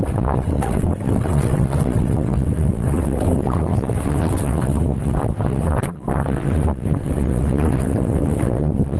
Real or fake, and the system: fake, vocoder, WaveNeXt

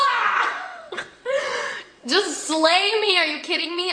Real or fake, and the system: fake, vocoder, WaveNeXt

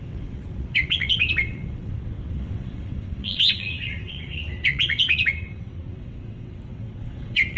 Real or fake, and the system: fake, vocoder, WaveNeXt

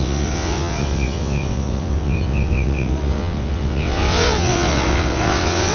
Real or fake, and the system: fake, vocoder, WaveNeXt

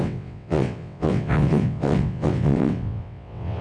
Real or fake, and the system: fake, vocoder, WaveNeXt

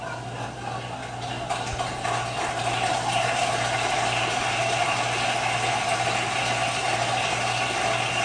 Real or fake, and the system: real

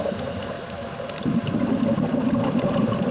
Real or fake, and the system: real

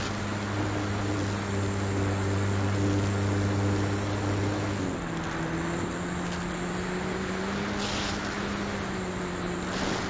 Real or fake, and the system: real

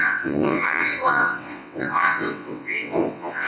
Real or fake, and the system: fake, vocoder, WaveNeXt